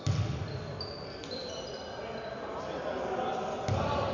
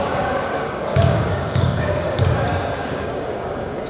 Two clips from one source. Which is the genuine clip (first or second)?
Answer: first